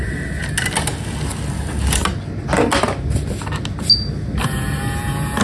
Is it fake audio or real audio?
real